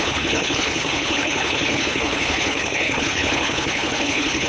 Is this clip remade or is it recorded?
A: remade